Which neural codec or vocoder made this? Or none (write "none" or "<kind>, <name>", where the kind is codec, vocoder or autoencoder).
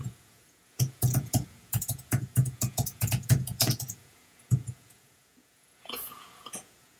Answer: vocoder, Vocos